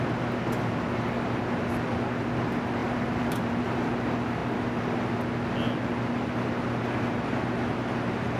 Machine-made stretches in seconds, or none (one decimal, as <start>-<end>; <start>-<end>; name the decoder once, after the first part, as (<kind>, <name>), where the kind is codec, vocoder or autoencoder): 2.8-3.6 (vocoder, BigVGAN v2)